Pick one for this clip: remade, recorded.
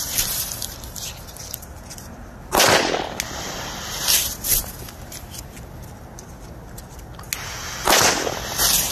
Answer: recorded